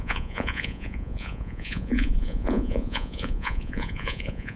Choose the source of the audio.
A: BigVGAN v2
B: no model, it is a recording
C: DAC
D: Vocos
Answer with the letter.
D